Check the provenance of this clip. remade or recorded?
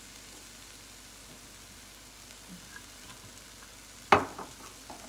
recorded